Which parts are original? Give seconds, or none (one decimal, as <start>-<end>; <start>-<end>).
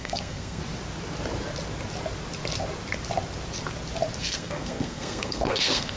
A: 0.6-4.2